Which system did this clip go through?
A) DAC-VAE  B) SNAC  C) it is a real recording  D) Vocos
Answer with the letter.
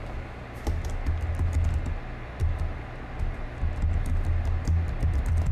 C